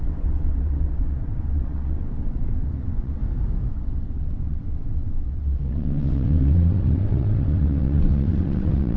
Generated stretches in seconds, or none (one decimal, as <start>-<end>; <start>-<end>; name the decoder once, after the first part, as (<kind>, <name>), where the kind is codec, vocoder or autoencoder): 0.0-3.2 (vocoder, WaveNeXt); 3.7-9.0